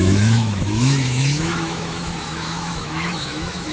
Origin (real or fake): fake